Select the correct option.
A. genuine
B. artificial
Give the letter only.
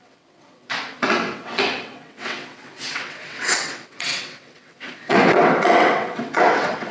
B